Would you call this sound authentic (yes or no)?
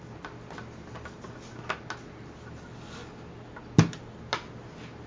yes